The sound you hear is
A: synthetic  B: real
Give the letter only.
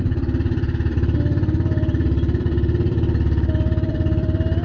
A